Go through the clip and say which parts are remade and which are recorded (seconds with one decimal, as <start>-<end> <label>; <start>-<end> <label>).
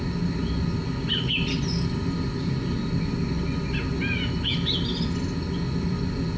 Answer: 0.0-6.4 recorded